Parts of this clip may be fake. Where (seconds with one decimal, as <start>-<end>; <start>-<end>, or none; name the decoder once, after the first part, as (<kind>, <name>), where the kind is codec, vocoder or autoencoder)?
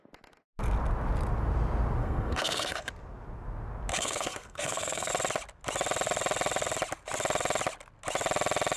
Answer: 2.0-2.9 (codec, SNAC); 3.9-5.1